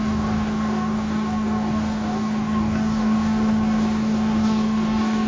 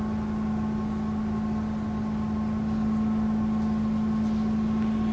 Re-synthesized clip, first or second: first